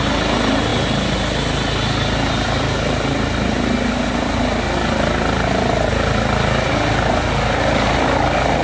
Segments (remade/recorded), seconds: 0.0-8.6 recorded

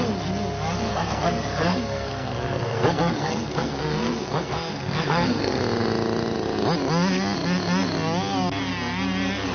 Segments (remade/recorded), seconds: 0.0-0.9 recorded; 0.9-5.6 remade; 5.6-9.5 recorded

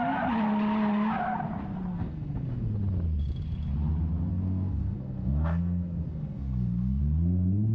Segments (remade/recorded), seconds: 0.0-1.9 recorded; 1.9-2.7 remade; 2.7-4.3 recorded; 4.3-7.0 remade; 7.0-7.7 recorded

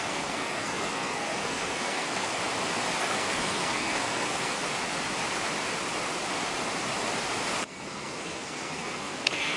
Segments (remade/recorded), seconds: 0.0-2.4 remade; 2.4-3.0 recorded; 3.0-4.6 remade; 4.6-7.6 recorded; 7.6-9.6 remade

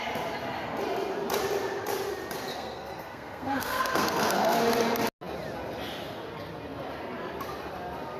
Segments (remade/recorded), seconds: 0.0-2.5 recorded; 2.5-4.6 remade; 4.6-8.2 recorded

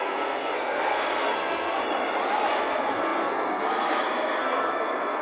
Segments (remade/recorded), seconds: 0.0-1.8 remade; 1.8-2.6 recorded; 2.6-5.2 remade

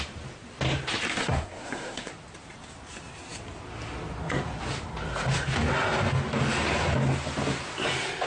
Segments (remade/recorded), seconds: 0.0-1.2 recorded; 1.2-2.1 remade; 2.1-8.3 recorded